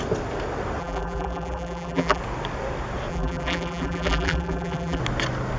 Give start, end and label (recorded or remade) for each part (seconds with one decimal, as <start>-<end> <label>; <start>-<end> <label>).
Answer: 0.0-0.8 recorded; 0.8-2.2 remade; 2.2-3.1 recorded; 3.1-5.0 remade; 5.0-5.6 recorded